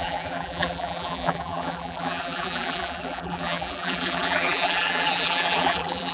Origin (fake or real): fake